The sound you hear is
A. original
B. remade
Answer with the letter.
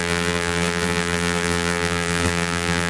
B